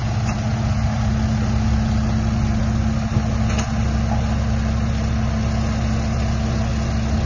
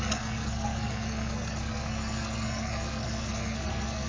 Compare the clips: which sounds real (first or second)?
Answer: first